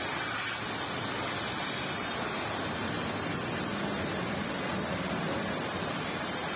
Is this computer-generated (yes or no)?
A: yes